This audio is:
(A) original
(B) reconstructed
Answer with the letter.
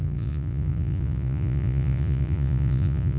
B